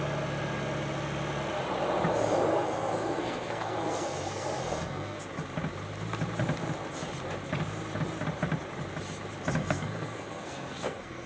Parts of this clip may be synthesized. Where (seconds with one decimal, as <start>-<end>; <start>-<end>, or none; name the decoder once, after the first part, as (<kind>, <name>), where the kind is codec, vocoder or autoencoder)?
2.5-5.2 (codec, SNAC); 9.6-11.3